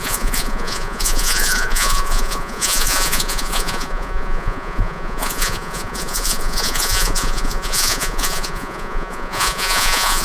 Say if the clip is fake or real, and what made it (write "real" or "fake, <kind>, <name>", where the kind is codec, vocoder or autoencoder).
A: fake, vocoder, Vocos